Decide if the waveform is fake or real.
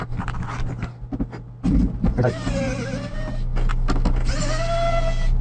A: real